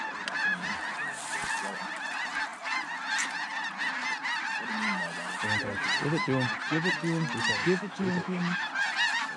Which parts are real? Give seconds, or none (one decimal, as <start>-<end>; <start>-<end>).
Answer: 0.0-7.6; 8.7-9.4